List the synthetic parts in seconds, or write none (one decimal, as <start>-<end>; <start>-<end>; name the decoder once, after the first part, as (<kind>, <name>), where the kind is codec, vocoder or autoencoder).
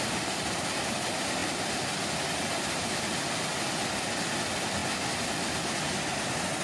none